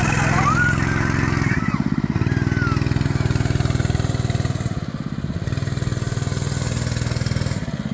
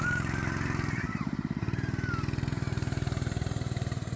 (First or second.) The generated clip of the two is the second